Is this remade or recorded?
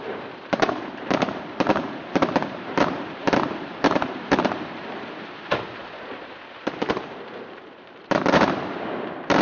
remade